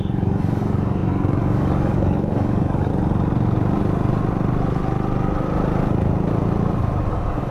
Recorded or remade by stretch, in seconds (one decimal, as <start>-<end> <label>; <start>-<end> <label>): 0.0-2.9 remade; 2.9-7.1 recorded; 7.1-7.5 remade